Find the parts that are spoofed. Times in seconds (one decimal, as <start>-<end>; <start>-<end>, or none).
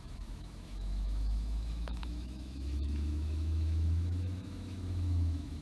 0.0-5.6